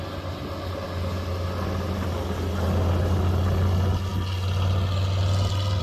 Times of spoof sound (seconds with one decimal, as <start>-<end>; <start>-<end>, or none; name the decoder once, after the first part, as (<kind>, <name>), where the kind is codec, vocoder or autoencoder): none